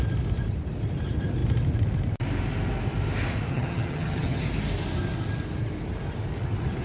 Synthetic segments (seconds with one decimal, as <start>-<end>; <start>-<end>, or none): 3.5-4.4